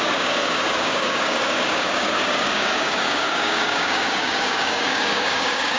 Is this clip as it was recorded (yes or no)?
no